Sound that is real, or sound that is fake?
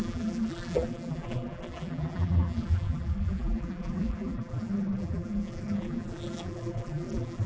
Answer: fake